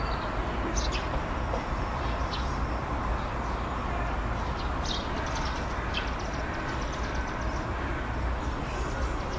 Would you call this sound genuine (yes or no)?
yes